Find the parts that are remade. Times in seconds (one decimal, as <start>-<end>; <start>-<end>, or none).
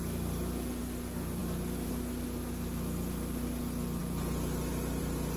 none